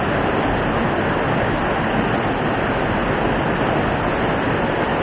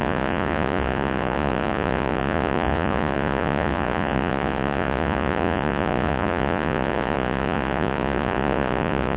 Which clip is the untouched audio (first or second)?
first